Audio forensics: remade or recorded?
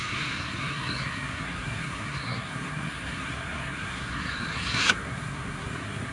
remade